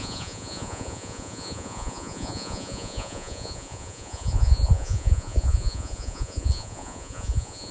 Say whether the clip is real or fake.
fake